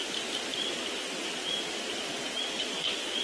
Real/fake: real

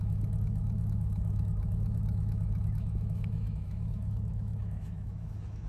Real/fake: fake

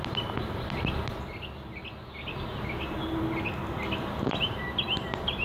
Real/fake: real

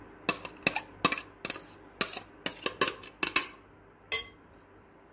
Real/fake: real